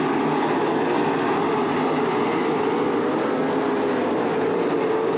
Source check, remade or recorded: recorded